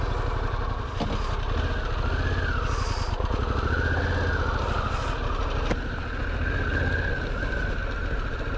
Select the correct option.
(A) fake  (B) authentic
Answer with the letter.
B